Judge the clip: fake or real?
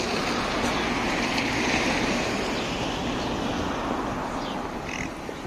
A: real